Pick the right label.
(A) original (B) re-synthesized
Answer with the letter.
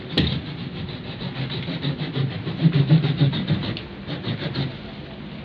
A